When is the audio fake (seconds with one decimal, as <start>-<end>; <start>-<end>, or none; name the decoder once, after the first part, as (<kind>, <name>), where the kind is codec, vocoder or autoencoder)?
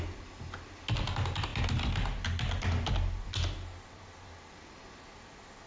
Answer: none